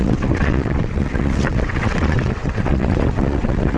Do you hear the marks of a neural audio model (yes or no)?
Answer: yes